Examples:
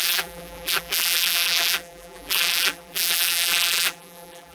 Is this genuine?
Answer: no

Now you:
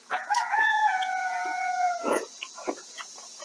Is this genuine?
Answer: no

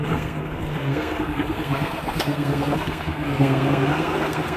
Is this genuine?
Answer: no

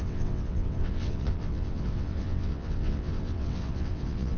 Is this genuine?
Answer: no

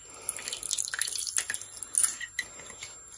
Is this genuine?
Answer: yes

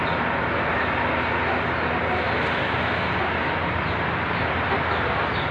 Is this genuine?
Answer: yes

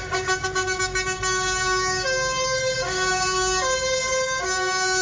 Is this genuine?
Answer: no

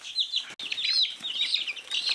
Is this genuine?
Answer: yes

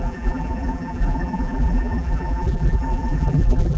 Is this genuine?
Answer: no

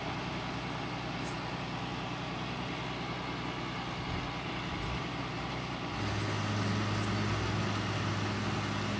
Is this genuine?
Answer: yes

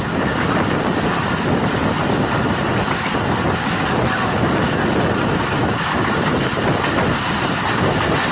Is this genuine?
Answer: yes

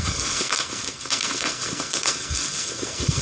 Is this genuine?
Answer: no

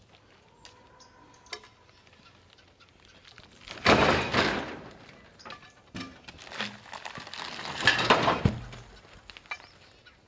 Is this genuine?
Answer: yes